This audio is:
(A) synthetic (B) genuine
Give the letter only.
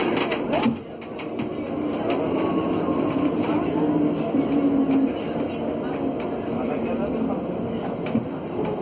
B